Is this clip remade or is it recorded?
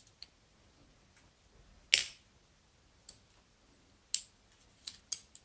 recorded